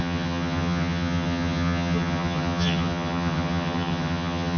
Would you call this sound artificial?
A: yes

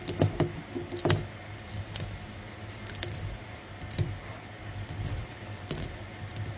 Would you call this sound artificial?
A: no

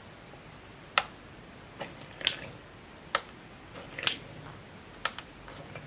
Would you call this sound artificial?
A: no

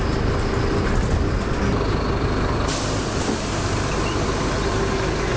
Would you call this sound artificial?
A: no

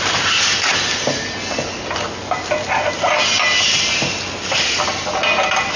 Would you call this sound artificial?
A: no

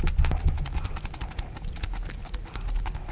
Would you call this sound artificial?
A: no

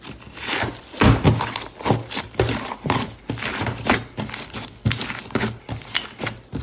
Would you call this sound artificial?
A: no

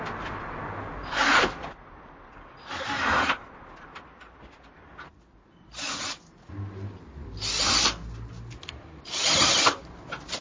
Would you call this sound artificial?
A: no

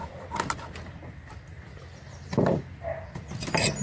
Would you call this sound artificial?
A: no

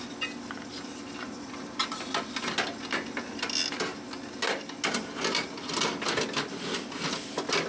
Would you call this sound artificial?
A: no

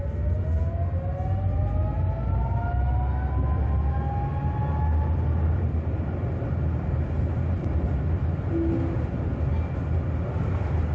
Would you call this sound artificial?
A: no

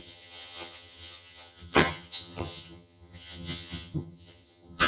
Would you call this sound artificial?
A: yes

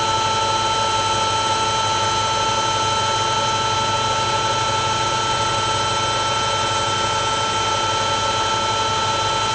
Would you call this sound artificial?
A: no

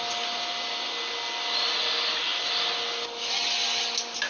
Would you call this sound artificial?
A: no